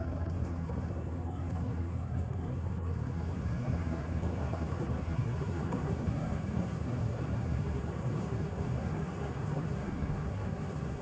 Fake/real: fake